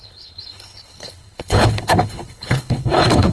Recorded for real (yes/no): no